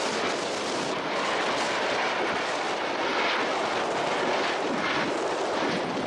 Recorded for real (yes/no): yes